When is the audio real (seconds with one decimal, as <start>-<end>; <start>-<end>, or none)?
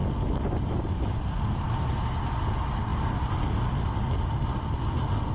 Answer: 0.0-5.3